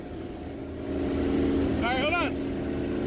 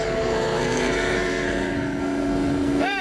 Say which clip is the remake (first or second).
second